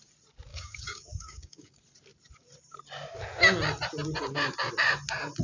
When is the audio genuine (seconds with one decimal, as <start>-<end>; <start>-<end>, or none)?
0.0-0.5; 1.7-5.4